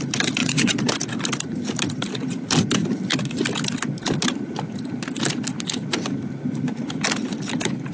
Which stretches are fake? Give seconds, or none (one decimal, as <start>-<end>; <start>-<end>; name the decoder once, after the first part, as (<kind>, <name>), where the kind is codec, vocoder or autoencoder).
0.4-0.9 (vocoder, WaveNeXt)